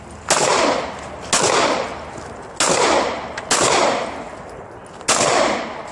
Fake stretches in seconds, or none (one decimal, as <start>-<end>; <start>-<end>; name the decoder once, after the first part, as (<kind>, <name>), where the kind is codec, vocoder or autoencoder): none